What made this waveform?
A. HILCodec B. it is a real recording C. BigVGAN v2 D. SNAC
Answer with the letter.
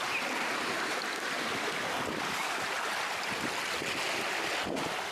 B